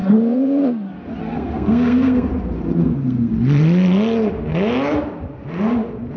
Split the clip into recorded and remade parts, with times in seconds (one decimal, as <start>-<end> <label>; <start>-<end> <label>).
0.0-0.6 remade; 0.6-1.2 recorded; 1.2-2.3 remade; 2.3-2.8 recorded; 2.8-3.3 remade; 3.3-6.2 recorded